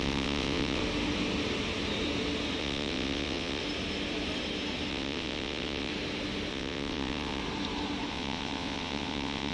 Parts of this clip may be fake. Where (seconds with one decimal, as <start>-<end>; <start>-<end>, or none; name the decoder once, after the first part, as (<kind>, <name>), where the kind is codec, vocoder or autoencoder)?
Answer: 0.0-0.8 (vocoder, WaveNeXt); 2.6-3.6; 4.9-5.9; 6.5-7.4; 8.1-9.5